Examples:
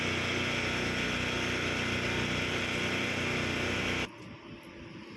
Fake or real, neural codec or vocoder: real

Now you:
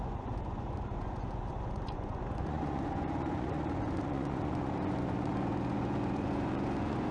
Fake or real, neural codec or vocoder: fake, vocoder, Vocos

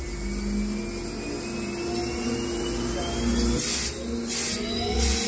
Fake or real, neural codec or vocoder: real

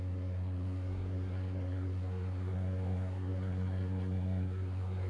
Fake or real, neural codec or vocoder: fake, codec, SNAC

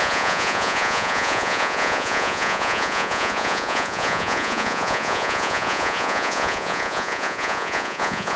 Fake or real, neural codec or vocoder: fake, vocoder, Vocos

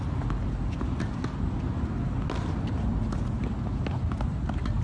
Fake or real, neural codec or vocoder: real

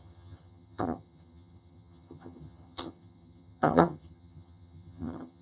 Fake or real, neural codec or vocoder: fake, vocoder, HiFi-GAN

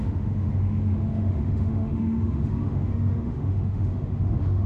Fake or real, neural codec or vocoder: fake, autoencoder, DAC-VAE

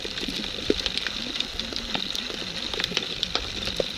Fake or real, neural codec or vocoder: real